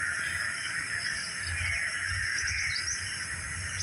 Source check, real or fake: real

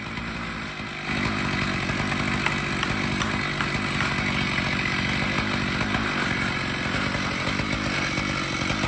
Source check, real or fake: real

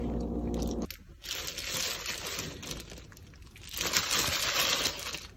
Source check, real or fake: real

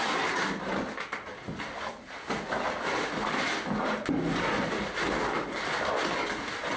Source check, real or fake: real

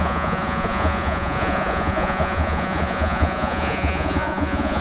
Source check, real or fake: fake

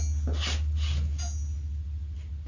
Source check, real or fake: real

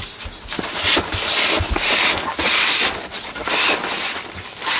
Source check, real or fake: real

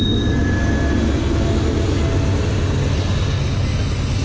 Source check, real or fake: real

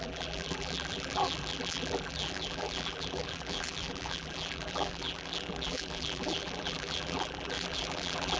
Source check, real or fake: fake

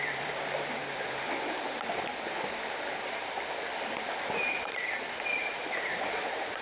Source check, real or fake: real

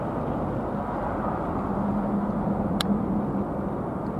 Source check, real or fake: real